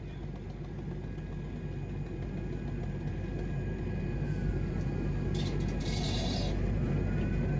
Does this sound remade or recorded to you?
recorded